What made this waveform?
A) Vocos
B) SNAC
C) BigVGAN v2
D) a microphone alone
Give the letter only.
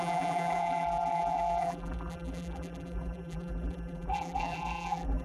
C